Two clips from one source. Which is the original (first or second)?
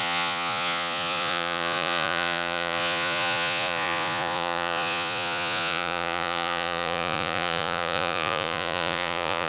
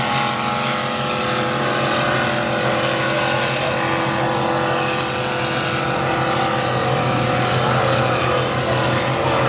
second